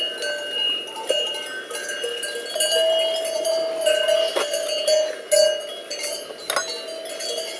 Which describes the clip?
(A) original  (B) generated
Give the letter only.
A